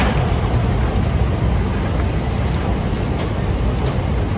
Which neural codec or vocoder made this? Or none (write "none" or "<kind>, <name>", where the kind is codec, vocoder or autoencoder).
none